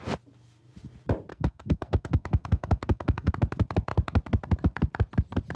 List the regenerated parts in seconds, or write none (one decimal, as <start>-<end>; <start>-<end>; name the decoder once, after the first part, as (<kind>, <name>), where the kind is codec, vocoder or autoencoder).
1.3-3.3 (codec, SNAC)